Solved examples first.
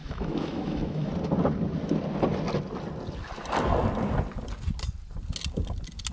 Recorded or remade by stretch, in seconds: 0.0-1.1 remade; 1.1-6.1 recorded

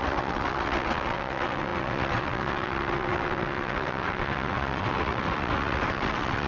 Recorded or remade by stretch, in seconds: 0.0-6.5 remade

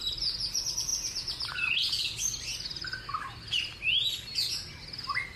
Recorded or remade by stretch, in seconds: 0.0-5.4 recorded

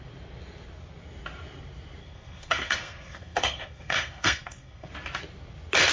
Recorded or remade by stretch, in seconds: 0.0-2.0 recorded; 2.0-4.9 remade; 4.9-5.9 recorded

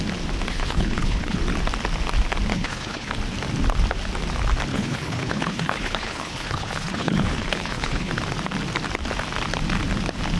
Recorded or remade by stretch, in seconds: 0.0-0.5 recorded; 0.5-1.4 remade; 1.4-2.5 recorded; 2.5-3.1 remade; 3.1-4.7 recorded; 4.7-8.1 remade; 8.1-10.4 recorded

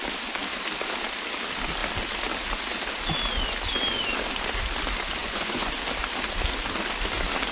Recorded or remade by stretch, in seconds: 0.0-5.2 recorded; 5.2-5.7 remade; 5.7-7.5 recorded